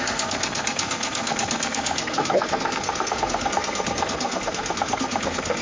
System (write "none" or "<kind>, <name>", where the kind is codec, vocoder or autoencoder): codec, SNAC